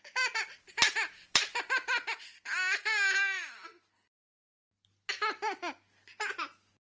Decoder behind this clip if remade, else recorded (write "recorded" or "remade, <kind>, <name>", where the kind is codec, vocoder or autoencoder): recorded